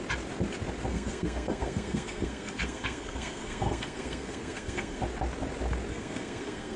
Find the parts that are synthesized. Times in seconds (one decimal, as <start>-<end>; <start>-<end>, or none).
0.9-5.0; 5.9-6.8